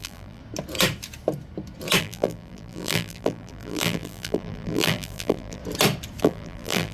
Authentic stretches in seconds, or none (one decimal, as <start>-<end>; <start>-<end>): 0.4-2.0; 5.6-6.2